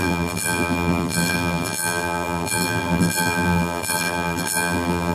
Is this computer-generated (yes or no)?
yes